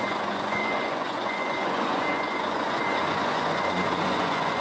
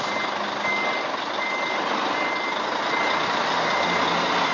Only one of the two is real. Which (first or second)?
second